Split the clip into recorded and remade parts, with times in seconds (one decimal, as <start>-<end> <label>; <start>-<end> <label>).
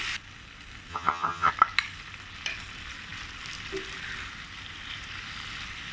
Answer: 0.0-0.9 recorded; 0.9-1.5 remade; 1.5-5.9 recorded